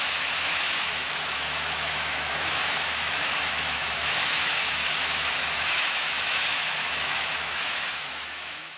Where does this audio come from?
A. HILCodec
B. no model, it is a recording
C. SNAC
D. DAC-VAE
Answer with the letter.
D